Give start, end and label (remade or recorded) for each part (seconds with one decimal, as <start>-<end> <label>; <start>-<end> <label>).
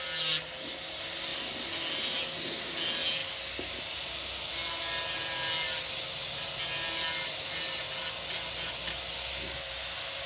0.0-10.3 recorded